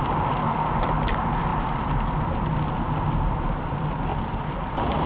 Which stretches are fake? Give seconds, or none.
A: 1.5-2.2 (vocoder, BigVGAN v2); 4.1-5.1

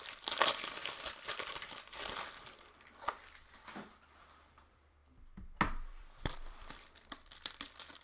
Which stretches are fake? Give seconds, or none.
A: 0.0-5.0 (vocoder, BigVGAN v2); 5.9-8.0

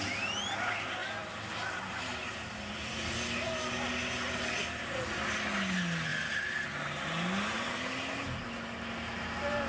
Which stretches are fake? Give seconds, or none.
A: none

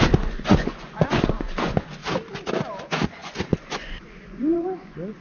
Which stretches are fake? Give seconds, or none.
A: 0.0-2.0 (vocoder, Vocos); 2.8-5.2

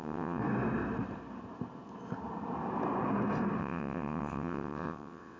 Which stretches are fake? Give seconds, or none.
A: 0.0-0.4 (vocoder, WaveNeXt); 3.6-5.4